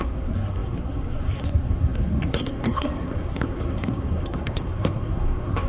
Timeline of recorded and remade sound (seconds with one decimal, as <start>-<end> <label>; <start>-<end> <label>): 0.0-5.7 remade